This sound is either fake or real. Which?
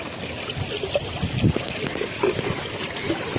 real